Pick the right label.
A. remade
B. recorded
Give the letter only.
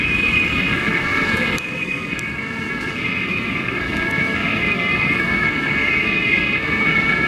A